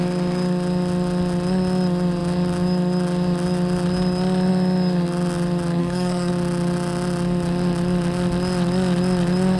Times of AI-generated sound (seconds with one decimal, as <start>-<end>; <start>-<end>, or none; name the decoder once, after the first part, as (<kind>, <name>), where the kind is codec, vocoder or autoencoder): 5.8-6.3 (codec, SNAC)